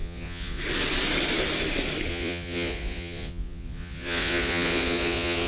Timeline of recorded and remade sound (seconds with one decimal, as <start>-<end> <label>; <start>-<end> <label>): 0.0-0.6 remade; 0.6-2.1 recorded; 2.1-5.5 remade